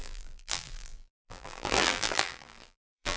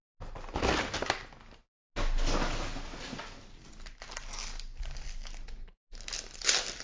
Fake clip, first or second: first